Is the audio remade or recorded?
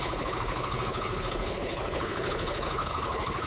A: remade